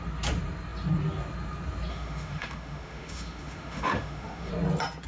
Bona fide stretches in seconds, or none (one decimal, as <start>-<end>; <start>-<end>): 0.0-1.9; 4.5-5.1